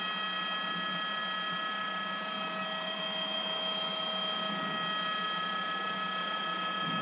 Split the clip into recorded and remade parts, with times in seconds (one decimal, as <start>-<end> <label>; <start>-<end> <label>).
0.0-7.0 recorded